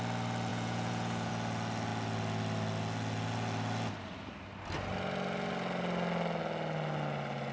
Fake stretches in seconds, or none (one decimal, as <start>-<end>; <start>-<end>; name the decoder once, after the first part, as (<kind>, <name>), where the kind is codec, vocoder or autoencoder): 0.5-1.3 (vocoder, Vocos)